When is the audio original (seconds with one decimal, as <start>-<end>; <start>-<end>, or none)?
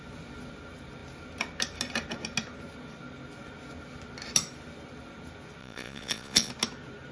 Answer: 0.0-5.6; 6.5-7.1